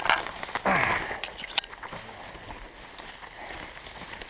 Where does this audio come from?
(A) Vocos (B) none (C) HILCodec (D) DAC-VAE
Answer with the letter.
B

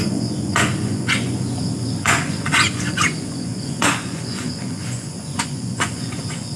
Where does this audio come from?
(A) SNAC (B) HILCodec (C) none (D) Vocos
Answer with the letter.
D